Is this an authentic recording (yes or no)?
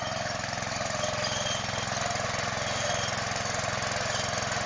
yes